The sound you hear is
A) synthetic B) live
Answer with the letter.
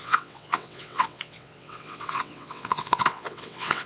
A